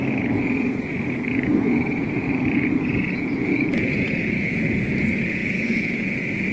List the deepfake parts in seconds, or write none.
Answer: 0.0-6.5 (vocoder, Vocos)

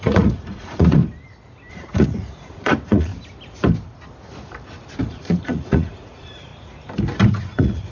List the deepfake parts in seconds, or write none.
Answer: 0.0-1.0 (vocoder, Vocos); 1.7-3.1; 5.1-6.5; 7.3-7.9

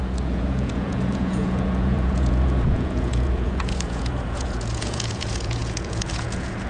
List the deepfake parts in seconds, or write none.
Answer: 0.0-6.7 (vocoder, Vocos)

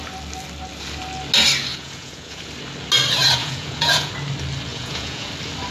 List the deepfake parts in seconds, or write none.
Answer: 1.7-2.5 (vocoder, Vocos); 3.4-4.1; 4.7-5.3

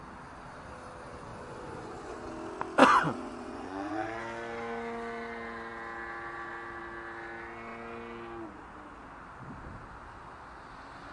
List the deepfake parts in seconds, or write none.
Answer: 1.3-2.3 (vocoder, Vocos); 2.8-4.2

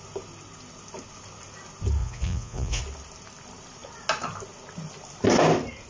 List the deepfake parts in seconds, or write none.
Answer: 2.0-2.8 (vocoder, Vocos)

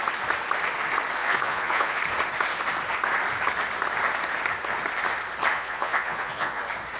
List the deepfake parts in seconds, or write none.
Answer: 1.2-2.0 (vocoder, Vocos); 5.5-6.6